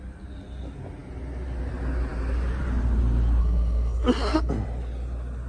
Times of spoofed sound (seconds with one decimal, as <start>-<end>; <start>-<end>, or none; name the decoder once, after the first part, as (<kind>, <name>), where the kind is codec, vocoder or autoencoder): 3.4-4.5 (codec, SNAC)